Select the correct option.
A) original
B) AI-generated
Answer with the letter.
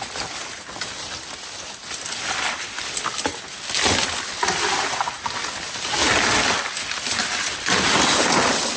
A